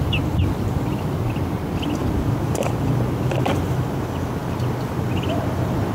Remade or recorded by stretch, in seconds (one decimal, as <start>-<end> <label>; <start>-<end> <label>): 0.0-5.9 recorded